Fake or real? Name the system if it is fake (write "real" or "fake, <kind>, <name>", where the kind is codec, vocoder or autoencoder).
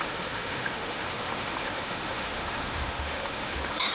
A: fake, autoencoder, DAC-VAE